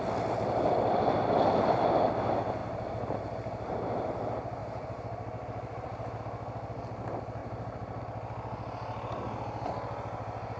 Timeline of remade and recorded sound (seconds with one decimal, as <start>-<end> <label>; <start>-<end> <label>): 0.0-2.6 recorded; 2.6-4.1 remade; 4.1-4.6 recorded; 4.6-6.2 remade; 6.2-7.4 recorded; 7.4-8.0 remade; 8.0-10.6 recorded